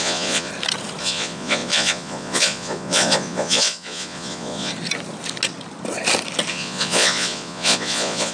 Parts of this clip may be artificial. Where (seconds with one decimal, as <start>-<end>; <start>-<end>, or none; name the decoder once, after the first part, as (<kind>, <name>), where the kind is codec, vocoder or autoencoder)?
0.0-0.5 (vocoder, Vocos); 1.0-4.7; 6.5-8.3